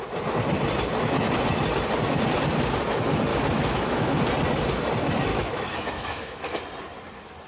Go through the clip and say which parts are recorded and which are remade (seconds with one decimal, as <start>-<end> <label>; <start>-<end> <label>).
0.0-3.3 recorded; 3.3-4.2 remade; 4.2-5.3 recorded; 5.3-6.6 remade; 6.6-7.5 recorded